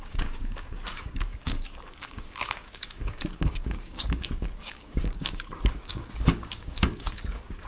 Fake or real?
fake